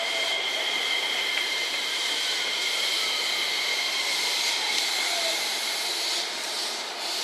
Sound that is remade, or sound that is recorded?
remade